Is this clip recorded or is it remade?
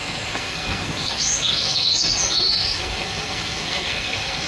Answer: remade